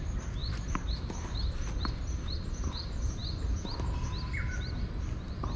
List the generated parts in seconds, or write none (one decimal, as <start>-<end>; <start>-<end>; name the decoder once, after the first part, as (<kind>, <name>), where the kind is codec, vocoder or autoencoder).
none

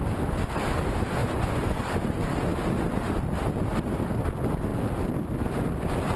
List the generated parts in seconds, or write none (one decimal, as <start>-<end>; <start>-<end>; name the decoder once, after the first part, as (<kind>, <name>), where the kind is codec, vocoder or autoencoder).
1.2-1.8 (vocoder, Vocos)

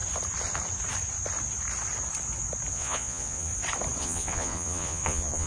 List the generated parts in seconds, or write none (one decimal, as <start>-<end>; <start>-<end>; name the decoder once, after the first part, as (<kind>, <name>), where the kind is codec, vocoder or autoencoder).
2.7-3.5 (vocoder, Vocos); 4.0-5.5

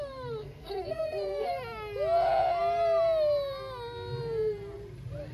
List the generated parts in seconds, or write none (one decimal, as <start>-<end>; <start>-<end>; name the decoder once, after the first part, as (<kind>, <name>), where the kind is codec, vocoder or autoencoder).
0.4-1.5 (codec, SNAC)

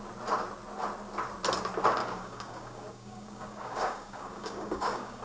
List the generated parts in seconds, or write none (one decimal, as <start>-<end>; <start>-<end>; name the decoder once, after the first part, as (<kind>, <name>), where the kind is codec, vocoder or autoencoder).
2.0-5.2 (codec, DAC)

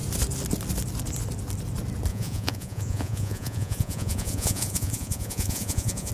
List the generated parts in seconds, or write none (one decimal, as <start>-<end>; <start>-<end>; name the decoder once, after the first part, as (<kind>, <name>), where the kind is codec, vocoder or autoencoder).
2.1-6.1 (vocoder, Vocos)